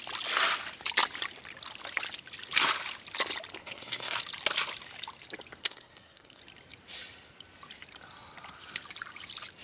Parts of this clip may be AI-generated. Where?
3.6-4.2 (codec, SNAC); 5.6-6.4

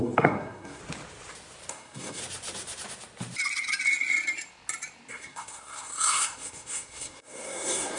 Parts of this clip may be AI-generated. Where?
0.0-0.8 (codec, SNAC); 1.7-2.2; 5.1-8.0

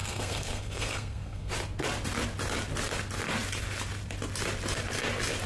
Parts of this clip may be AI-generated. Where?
0.0-1.5 (codec, SNAC)

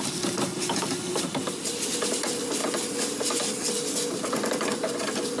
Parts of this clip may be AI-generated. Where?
none

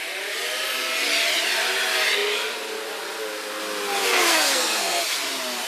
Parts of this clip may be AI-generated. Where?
4.0-5.0 (codec, SNAC)

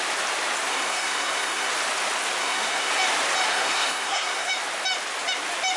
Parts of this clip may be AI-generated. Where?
0.7-1.7 (codec, SNAC); 2.4-2.9; 3.5-4.5